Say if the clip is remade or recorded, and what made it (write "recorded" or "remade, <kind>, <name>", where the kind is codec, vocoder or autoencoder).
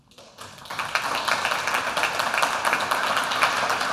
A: recorded